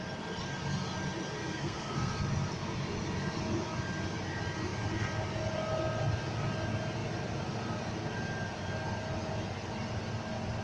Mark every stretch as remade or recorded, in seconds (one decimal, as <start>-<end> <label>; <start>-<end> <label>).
0.0-1.4 recorded; 1.4-2.1 remade; 2.1-10.6 recorded